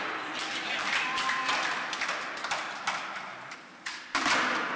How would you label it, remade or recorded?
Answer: remade